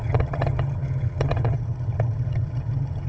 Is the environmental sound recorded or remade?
remade